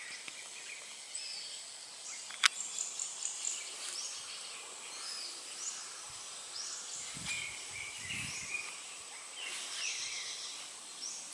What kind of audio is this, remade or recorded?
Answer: recorded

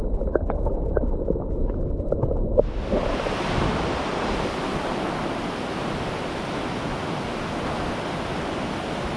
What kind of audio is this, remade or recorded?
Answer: recorded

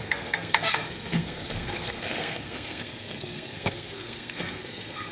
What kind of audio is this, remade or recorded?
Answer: remade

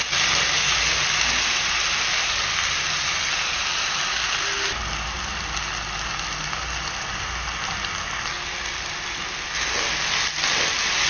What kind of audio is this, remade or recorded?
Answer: recorded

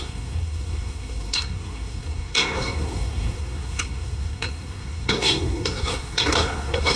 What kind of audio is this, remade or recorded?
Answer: remade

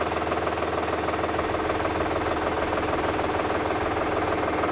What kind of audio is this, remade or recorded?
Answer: recorded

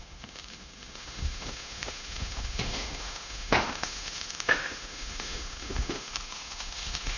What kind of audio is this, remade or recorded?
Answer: remade